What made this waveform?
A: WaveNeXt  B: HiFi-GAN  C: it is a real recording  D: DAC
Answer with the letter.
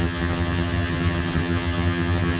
B